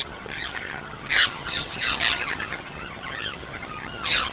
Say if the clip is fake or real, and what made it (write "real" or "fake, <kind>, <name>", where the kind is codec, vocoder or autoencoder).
fake, vocoder, HiFi-GAN